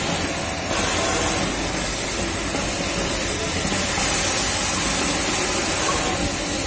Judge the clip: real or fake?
real